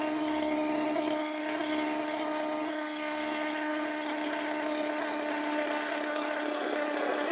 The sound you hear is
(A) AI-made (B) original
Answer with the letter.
A